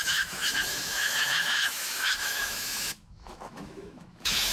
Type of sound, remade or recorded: remade